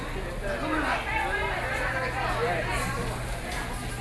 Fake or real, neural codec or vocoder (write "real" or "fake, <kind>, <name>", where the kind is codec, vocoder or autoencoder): real